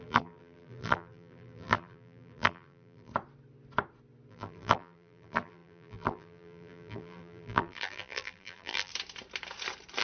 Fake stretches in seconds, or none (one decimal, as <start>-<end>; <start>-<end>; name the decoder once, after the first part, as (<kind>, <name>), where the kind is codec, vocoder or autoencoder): 0.0-3.1 (vocoder, BigVGAN v2); 4.3-8.9